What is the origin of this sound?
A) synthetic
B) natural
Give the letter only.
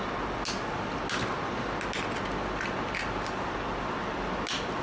B